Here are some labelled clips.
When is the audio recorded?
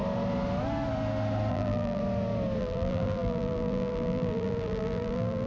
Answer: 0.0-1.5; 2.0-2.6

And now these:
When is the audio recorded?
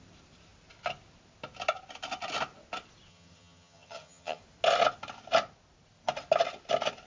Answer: 0.0-3.1; 4.4-7.1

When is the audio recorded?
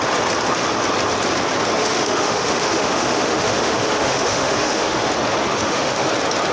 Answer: 0.0-1.8; 5.1-5.5; 6.1-6.5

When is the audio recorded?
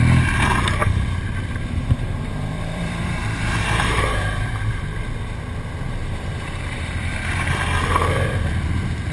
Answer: 0.0-0.8; 5.0-6.0; 7.6-9.1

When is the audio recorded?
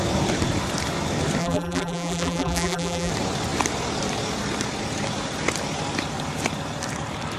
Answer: 0.0-1.4; 3.1-7.4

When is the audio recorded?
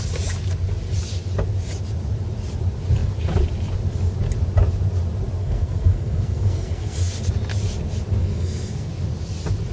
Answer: 0.0-5.4; 7.3-8.2; 8.9-9.7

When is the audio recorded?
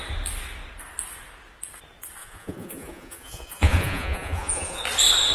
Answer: 0.0-2.2; 4.8-5.3